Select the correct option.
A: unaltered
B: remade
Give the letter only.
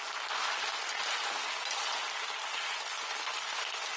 A